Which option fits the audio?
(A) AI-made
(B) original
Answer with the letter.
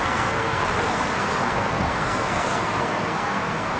A